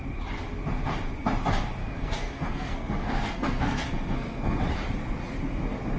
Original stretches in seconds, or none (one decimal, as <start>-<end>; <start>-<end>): 0.0-1.8; 4.6-6.0